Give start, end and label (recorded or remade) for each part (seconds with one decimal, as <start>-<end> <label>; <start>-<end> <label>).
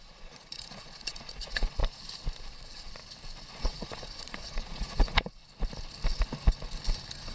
0.0-1.8 remade; 1.8-2.4 recorded; 2.4-3.0 remade; 3.0-3.6 recorded; 3.6-5.4 remade; 5.4-7.3 recorded